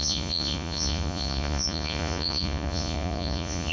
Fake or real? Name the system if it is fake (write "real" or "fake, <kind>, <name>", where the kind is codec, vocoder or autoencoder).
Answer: fake, vocoder, Vocos